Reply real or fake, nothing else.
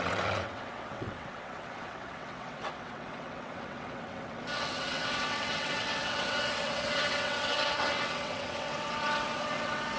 fake